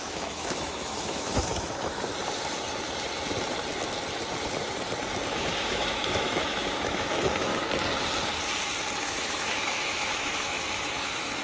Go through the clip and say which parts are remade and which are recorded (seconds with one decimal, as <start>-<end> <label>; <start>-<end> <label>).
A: 0.0-2.1 remade; 2.1-5.3 recorded; 5.3-7.5 remade; 7.5-9.0 recorded; 9.0-11.4 remade

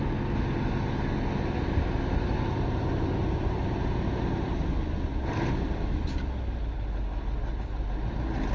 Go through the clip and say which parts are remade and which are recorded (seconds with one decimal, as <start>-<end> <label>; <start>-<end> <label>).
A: 0.0-7.5 recorded; 7.5-8.1 remade; 8.1-8.5 recorded

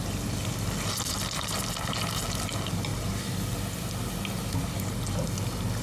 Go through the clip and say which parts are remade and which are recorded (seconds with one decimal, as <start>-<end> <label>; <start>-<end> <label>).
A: 0.0-5.8 recorded

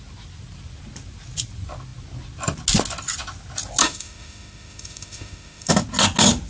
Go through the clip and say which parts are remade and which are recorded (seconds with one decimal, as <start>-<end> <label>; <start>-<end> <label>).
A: 0.0-3.8 recorded; 3.8-5.7 remade; 5.7-6.5 recorded

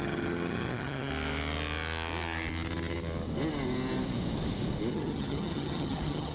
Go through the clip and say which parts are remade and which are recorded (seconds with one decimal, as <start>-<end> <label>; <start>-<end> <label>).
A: 0.0-1.1 remade; 1.1-4.9 recorded; 4.9-6.3 remade